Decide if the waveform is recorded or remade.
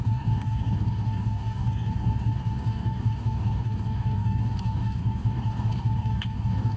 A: remade